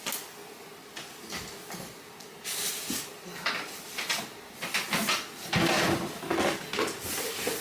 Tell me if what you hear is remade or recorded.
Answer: recorded